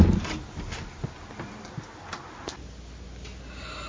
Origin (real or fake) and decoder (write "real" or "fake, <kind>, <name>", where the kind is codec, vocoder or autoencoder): real